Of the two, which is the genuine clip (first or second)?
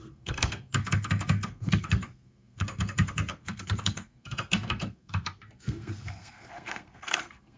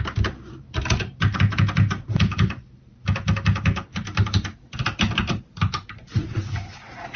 second